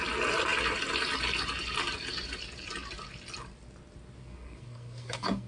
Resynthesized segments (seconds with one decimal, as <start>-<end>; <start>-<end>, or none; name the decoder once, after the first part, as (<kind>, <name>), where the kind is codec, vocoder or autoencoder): 4.2-5.5 (codec, SNAC)